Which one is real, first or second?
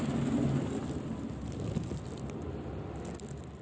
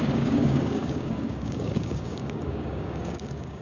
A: first